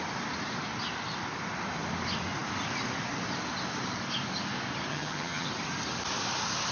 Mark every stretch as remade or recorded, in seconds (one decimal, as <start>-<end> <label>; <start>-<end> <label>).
0.0-4.9 recorded; 4.9-5.5 remade; 5.5-6.7 recorded